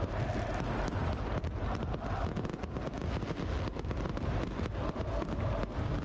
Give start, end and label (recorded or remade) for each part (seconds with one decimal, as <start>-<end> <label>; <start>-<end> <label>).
0.0-6.0 recorded